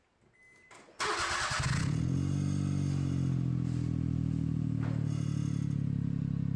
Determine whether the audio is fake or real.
real